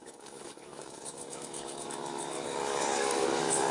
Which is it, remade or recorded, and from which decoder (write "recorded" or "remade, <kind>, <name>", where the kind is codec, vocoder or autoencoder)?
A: remade, codec, DAC